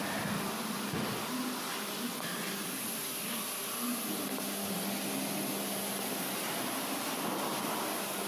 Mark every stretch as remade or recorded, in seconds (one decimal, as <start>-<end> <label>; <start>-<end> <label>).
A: 0.0-8.3 recorded